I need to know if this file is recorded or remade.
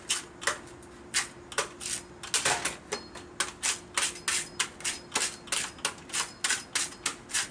recorded